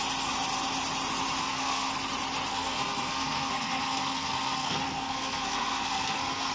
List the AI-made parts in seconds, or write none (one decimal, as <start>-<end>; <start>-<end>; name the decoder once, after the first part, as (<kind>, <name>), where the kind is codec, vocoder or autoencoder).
1.4-1.9 (codec, SNAC); 2.5-6.5